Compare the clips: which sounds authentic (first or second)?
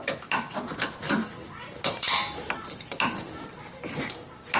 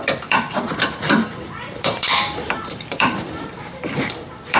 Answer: first